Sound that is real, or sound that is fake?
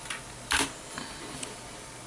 real